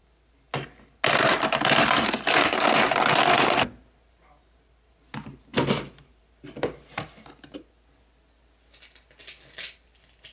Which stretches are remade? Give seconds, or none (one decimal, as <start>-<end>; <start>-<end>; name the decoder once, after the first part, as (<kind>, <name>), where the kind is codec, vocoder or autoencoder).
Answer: none